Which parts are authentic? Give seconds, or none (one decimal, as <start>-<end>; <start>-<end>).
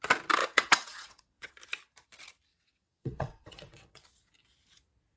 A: 0.0-0.4; 1.5-2.5; 4.0-5.2